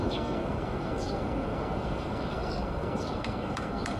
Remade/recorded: remade